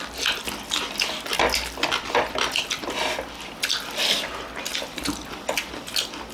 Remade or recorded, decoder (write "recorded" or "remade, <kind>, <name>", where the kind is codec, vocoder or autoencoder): recorded